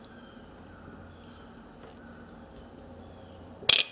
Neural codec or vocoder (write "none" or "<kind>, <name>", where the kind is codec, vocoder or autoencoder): none